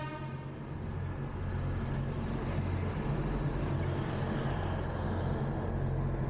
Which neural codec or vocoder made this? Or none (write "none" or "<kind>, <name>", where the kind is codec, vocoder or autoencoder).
none